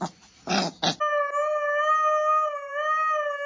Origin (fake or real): real